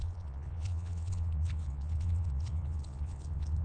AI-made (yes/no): yes